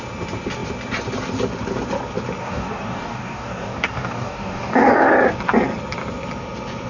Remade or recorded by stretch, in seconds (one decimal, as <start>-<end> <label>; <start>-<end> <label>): 0.0-2.4 recorded; 2.4-4.9 remade; 4.9-6.9 recorded